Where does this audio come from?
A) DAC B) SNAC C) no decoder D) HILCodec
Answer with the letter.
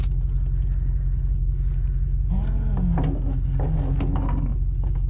C